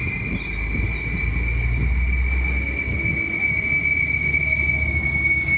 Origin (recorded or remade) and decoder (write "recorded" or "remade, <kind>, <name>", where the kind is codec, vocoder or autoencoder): recorded